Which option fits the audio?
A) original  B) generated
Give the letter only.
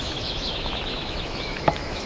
B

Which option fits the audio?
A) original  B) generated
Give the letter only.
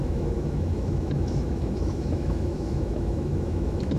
B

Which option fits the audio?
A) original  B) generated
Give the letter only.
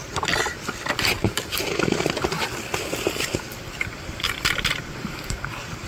A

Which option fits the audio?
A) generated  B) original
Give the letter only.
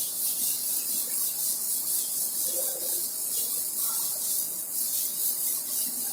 B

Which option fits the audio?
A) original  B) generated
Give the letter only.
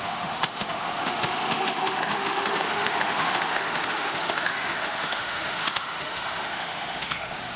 B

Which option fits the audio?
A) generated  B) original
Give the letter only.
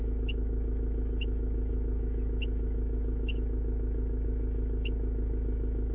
A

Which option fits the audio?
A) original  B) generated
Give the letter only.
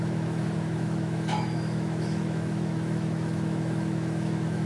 B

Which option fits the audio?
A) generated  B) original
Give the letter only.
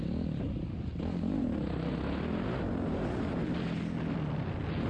B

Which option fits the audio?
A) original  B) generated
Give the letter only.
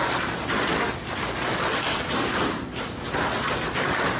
A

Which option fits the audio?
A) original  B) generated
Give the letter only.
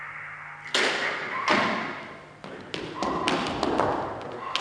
A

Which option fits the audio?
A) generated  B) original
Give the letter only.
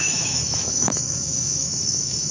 A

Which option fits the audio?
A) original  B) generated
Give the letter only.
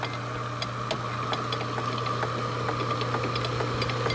A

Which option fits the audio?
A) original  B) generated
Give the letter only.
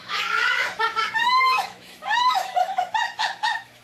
B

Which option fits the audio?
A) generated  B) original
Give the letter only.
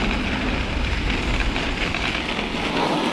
B